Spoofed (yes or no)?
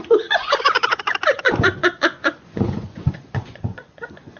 yes